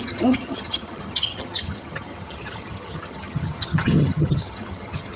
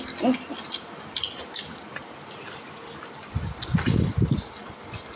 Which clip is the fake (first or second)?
first